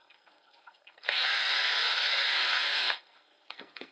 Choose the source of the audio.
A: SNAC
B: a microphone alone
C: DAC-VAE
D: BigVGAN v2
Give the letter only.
A